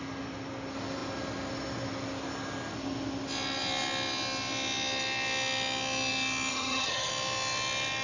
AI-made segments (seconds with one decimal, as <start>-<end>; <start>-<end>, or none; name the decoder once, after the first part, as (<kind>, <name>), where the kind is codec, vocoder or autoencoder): 6.5-7.1 (vocoder, HiFi-GAN)

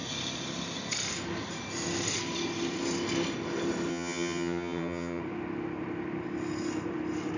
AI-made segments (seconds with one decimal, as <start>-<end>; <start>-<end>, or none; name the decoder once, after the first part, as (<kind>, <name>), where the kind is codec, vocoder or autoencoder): 3.9-5.2 (vocoder, HiFi-GAN)

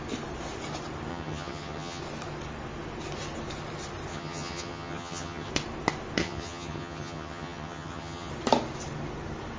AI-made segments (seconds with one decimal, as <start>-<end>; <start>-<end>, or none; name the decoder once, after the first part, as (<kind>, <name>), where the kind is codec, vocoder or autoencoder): 1.1-2.0 (vocoder, HiFi-GAN); 4.1-5.5; 6.2-8.3

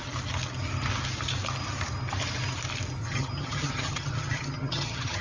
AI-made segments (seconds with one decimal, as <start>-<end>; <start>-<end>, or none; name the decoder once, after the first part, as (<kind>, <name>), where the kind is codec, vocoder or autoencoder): 3.0-5.2 (vocoder, HiFi-GAN)

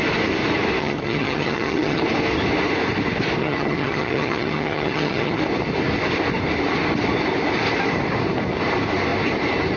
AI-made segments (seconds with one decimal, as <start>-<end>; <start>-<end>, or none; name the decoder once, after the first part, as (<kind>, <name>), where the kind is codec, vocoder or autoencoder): 0.8-2.0 (vocoder, HiFi-GAN); 3.4-5.4